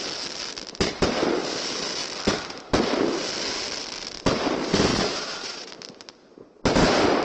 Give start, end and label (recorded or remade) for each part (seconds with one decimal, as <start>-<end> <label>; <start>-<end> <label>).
0.0-4.9 recorded; 4.9-5.7 remade; 5.7-7.2 recorded